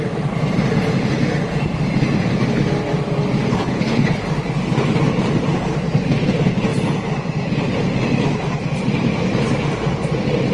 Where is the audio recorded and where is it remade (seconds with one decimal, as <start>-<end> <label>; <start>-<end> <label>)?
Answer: 0.0-3.5 recorded; 3.5-4.2 remade; 4.2-10.5 recorded